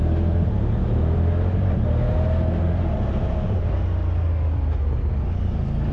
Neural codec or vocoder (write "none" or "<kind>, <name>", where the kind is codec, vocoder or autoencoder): none